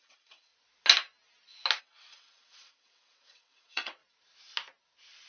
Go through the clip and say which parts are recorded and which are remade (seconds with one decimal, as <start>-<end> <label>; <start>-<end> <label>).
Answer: 0.0-0.5 remade; 0.5-1.8 recorded; 1.8-4.0 remade; 4.0-5.3 recorded